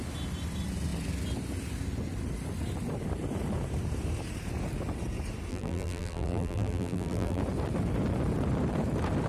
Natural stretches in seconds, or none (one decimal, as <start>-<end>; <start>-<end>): 0.0-5.5; 7.4-9.3